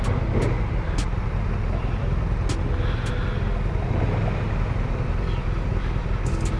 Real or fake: real